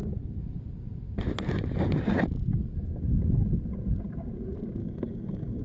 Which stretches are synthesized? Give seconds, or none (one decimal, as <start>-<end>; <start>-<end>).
4.8-5.6